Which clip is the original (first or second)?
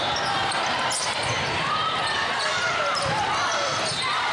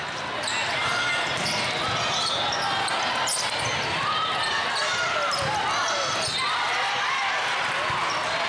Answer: second